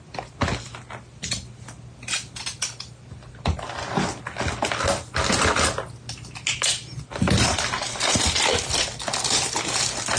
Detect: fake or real real